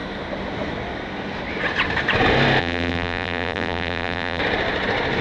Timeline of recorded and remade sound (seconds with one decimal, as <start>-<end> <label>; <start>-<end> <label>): 0.0-2.6 recorded; 2.6-4.4 remade; 4.4-5.2 recorded